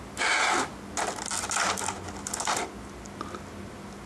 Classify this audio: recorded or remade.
recorded